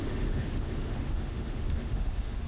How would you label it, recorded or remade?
remade